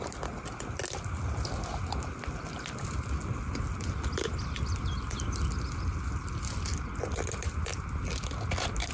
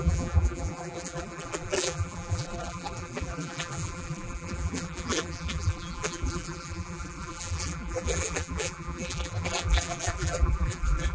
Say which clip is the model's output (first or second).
second